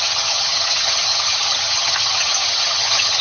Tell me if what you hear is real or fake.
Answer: fake